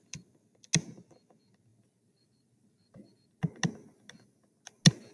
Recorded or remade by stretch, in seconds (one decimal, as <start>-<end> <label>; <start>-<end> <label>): 0.0-1.7 recorded; 1.7-3.6 remade; 3.6-5.1 recorded